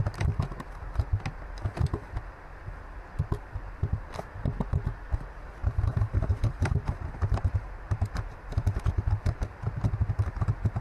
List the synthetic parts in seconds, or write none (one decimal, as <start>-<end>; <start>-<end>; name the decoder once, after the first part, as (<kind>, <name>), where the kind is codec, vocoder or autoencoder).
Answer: 5.6-8.9 (vocoder, BigVGAN v2)